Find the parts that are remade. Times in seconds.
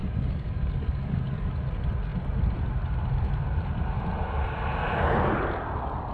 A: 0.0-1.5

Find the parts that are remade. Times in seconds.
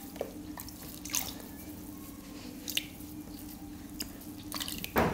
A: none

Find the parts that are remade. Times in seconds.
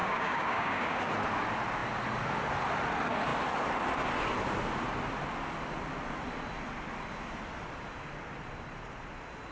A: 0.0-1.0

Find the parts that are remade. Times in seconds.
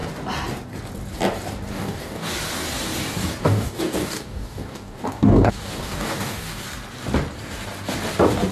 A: 1.7-2.3; 3.4-6.6